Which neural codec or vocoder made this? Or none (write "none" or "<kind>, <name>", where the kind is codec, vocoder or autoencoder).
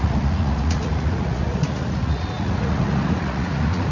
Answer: vocoder, Vocos